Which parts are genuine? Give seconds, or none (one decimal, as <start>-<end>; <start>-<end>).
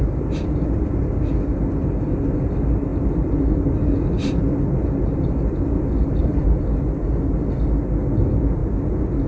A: 0.0-9.3